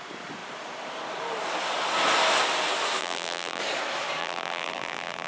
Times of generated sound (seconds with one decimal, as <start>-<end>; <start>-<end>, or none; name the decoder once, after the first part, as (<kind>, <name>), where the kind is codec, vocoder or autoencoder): 3.0-3.6 (vocoder, BigVGAN v2); 4.2-5.3